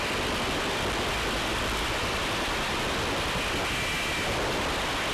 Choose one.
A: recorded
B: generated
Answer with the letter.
A